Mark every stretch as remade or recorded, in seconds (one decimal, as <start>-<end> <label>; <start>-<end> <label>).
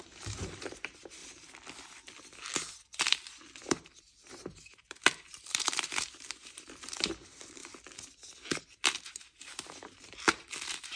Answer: 0.0-1.2 remade; 1.2-3.7 recorded; 3.7-7.6 remade; 7.6-8.6 recorded; 8.6-11.0 remade